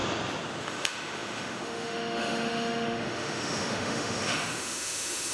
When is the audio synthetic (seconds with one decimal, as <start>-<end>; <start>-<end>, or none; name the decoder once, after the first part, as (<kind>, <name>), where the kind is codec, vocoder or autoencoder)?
0.6-5.3 (autoencoder, DAC-VAE)